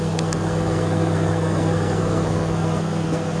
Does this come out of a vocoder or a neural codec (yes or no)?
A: yes